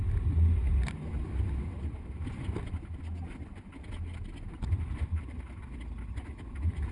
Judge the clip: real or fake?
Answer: real